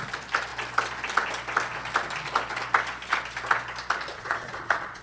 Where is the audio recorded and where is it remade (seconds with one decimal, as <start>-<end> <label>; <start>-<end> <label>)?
0.0-4.1 recorded; 4.1-5.0 remade

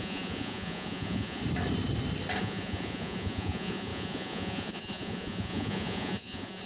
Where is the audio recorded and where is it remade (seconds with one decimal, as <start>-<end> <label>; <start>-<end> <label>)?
0.0-1.4 remade; 1.4-2.4 recorded; 2.4-6.7 remade